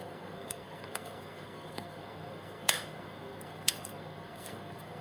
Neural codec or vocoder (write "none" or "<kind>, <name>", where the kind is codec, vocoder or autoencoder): codec, SNAC